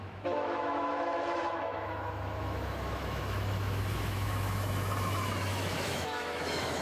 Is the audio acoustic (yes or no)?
no